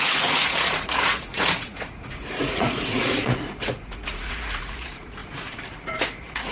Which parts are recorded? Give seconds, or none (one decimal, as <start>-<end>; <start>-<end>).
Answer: none